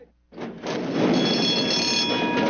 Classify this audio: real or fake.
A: real